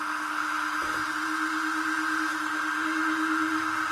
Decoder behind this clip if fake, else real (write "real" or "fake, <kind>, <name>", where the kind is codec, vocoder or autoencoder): real